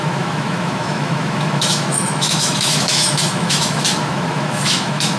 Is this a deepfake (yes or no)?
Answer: yes